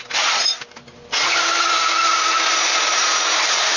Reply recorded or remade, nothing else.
recorded